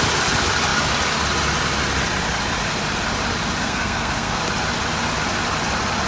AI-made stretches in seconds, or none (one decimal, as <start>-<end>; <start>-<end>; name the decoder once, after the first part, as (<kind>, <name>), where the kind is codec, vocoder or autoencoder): 3.6-4.4 (codec, SNAC)